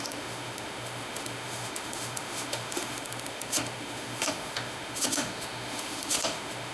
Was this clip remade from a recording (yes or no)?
yes